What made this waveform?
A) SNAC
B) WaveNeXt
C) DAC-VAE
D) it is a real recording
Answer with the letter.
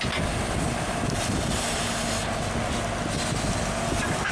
D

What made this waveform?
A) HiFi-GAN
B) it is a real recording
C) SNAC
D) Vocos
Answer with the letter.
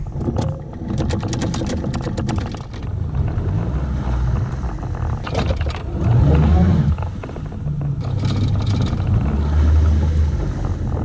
B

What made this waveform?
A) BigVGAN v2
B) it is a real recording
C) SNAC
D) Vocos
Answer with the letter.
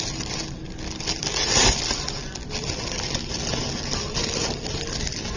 B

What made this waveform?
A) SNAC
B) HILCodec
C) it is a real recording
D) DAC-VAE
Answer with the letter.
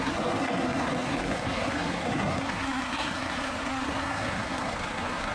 A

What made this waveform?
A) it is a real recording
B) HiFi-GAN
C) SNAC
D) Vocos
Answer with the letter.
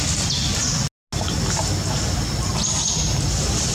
A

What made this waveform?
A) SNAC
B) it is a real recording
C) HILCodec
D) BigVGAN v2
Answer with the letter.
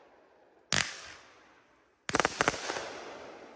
B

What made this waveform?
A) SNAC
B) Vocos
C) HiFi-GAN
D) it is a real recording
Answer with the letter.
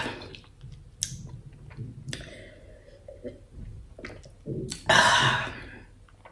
D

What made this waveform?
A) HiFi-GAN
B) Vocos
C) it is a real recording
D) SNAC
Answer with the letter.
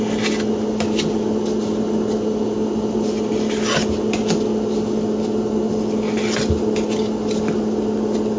C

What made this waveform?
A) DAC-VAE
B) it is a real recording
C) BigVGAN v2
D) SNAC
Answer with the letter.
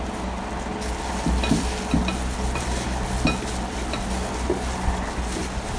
B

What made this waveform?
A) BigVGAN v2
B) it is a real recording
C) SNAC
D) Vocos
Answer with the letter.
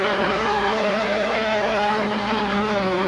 C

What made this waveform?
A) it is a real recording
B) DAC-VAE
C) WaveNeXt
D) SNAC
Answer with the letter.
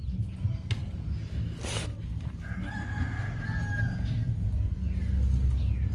A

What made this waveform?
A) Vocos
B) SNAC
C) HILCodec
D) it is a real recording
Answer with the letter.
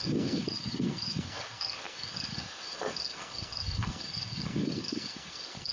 B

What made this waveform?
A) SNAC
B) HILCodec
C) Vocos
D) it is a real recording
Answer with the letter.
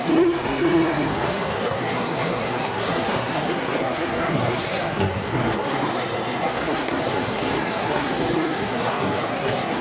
A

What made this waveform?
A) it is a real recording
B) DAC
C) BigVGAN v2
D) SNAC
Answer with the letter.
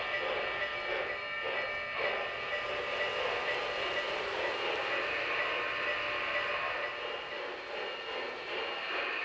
A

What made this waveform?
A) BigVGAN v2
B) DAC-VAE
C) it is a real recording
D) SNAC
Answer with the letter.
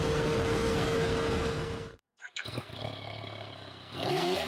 D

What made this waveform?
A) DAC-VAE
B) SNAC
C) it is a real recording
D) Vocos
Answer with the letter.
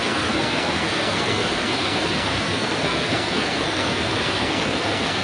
B